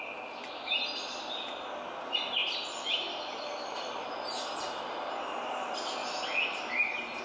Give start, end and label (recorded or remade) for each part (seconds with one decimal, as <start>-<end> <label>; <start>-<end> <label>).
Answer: 0.0-2.4 recorded; 2.4-5.1 remade; 5.1-6.0 recorded; 6.0-7.2 remade